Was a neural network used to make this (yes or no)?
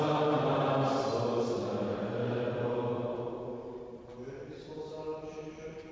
yes